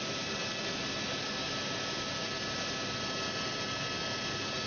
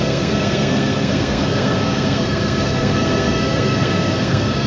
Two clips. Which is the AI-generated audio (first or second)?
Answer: second